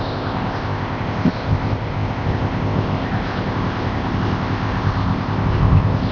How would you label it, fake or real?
fake